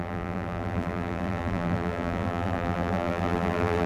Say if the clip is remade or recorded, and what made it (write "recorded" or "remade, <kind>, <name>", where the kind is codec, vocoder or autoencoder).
remade, vocoder, BigVGAN v2